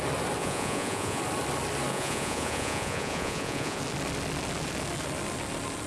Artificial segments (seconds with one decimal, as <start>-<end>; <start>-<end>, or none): 0.4-1.2; 1.9-3.8